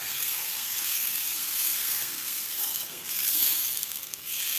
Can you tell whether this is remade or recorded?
remade